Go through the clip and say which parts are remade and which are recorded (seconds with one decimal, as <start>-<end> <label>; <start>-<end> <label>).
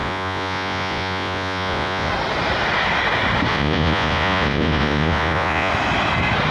0.0-2.1 remade; 2.1-3.5 recorded; 3.5-5.7 remade; 5.7-6.5 recorded